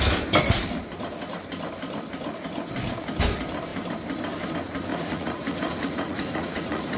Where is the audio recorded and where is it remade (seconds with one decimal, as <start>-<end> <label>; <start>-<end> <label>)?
0.0-4.9 recorded; 4.9-7.0 remade